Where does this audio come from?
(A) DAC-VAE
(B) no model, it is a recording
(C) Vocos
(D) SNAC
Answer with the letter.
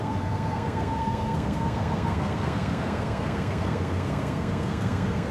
D